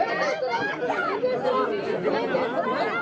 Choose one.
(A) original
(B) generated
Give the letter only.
A